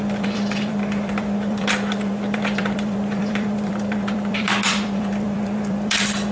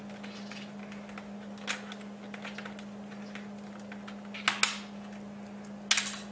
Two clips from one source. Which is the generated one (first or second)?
first